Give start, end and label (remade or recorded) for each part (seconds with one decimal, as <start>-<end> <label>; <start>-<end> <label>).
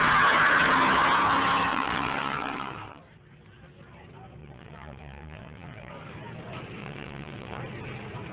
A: 0.0-1.7 recorded; 1.7-3.0 remade; 3.0-4.4 recorded; 4.4-5.9 remade; 5.9-6.8 recorded; 6.8-7.6 remade; 7.6-8.3 recorded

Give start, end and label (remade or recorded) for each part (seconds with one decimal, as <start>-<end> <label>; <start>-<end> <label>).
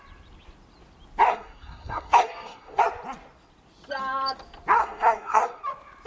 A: 0.0-1.3 recorded; 1.3-2.8 remade; 2.8-4.8 recorded; 4.8-5.6 remade; 5.6-6.1 recorded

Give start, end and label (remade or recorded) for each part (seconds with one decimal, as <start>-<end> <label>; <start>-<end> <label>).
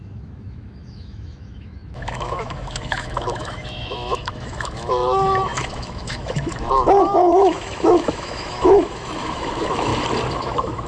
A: 0.0-9.9 remade; 9.9-10.4 recorded; 10.4-10.9 remade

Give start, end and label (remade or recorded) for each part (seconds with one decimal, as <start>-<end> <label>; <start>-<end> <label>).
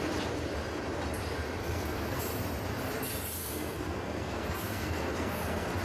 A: 0.0-1.6 recorded; 1.6-2.2 remade; 2.2-3.4 recorded; 3.4-5.8 remade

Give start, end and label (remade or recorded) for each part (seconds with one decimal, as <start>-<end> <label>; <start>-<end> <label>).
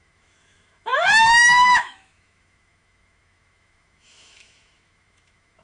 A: 0.0-5.6 remade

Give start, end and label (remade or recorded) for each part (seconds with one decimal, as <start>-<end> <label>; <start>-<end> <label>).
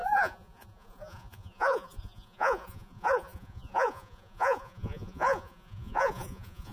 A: 0.0-6.7 remade